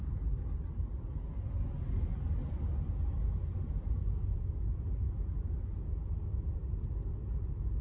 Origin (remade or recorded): recorded